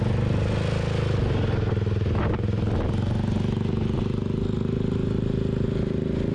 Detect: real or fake real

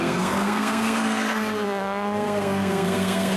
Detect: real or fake fake